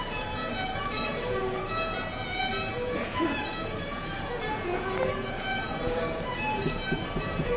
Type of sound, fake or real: fake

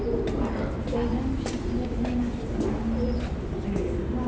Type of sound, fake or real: real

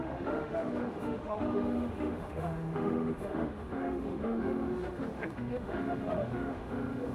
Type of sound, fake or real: fake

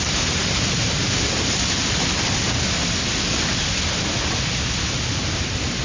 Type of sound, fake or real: real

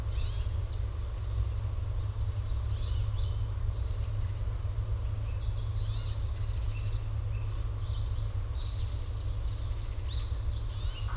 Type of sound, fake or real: real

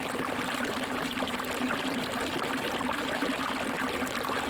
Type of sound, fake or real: real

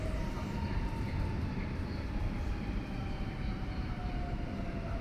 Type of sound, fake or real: fake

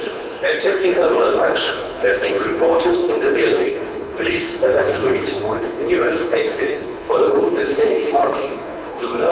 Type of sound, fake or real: fake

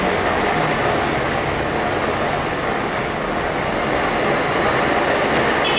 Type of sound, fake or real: real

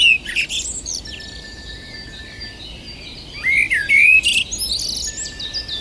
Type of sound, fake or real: real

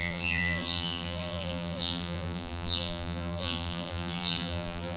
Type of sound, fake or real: fake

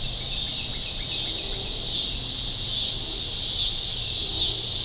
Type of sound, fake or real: real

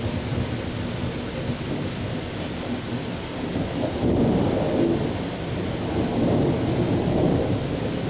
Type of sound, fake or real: real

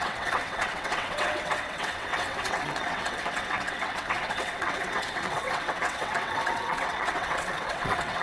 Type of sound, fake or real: fake